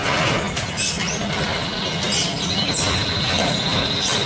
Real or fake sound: real